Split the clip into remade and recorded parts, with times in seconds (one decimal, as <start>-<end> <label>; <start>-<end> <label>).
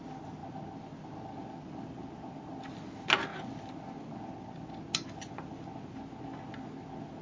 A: 0.0-7.2 recorded